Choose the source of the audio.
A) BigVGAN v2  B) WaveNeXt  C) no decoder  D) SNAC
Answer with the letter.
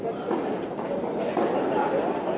C